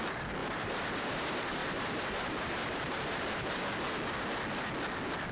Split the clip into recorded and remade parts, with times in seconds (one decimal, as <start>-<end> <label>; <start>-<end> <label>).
0.0-0.4 recorded; 0.4-3.6 remade; 3.6-5.3 recorded